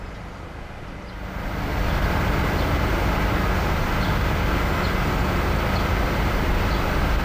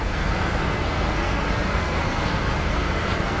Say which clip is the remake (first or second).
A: second